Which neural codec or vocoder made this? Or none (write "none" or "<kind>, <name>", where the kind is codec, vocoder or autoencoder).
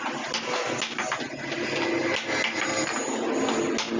none